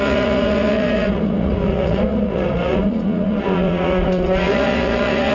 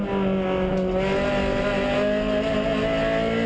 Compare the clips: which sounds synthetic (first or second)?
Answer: first